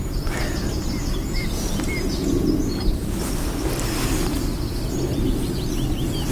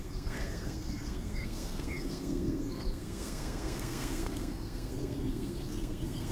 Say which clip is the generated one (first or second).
second